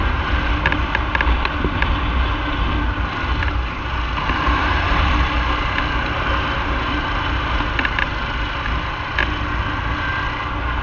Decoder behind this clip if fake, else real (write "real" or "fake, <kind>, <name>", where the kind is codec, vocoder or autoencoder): real